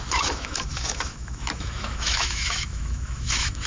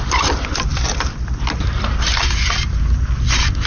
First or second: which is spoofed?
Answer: first